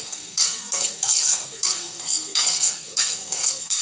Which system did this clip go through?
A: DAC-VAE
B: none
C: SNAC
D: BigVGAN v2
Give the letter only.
C